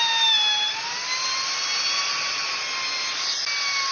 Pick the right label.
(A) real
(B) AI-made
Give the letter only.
A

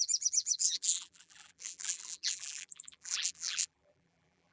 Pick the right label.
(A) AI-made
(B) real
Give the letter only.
A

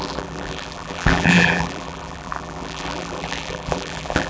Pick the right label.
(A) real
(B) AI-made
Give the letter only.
B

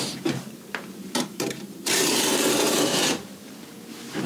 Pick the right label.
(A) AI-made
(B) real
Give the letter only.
A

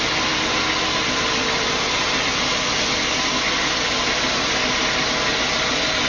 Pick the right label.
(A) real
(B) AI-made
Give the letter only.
A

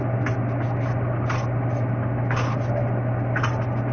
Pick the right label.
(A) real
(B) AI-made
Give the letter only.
A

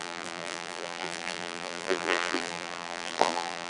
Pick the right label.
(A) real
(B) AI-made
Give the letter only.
B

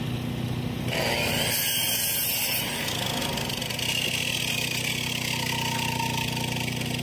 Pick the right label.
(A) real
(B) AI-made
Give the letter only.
A